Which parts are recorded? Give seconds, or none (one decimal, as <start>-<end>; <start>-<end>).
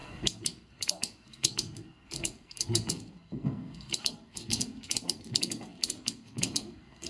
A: none